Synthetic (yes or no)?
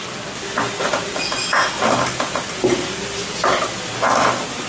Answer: no